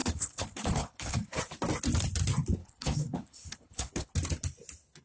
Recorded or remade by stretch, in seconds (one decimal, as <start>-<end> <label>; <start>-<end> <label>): 0.0-1.4 remade; 1.4-2.6 recorded; 2.6-4.1 remade; 4.1-5.0 recorded